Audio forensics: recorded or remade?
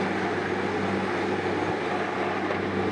recorded